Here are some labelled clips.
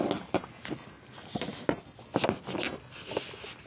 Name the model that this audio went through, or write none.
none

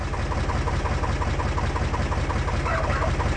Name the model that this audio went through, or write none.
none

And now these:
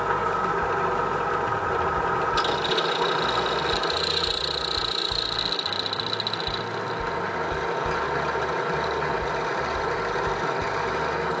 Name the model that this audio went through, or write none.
none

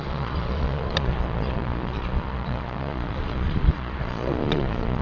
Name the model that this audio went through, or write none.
vocoder, Vocos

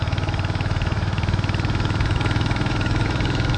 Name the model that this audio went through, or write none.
autoencoder, DAC-VAE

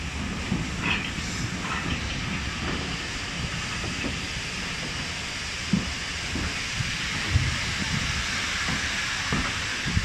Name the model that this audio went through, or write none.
none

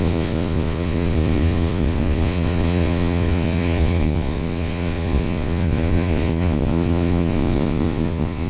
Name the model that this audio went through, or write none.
vocoder, Vocos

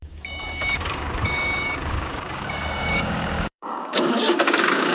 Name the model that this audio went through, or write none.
codec, DAC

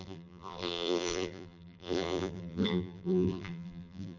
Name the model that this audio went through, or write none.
vocoder, BigVGAN v2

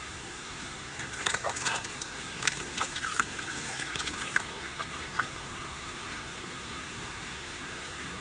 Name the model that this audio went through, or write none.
codec, SNAC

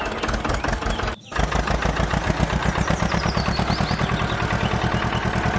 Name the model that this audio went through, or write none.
none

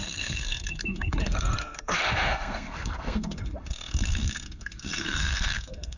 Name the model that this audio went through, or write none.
codec, SNAC